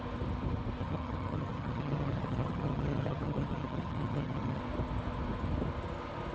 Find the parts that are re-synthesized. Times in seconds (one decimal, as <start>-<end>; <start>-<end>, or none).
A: 0.8-4.6